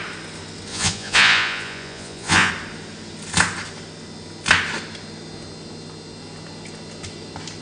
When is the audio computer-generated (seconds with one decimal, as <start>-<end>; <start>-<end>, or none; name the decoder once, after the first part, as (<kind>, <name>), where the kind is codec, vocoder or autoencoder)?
0.7-2.5 (vocoder, Vocos)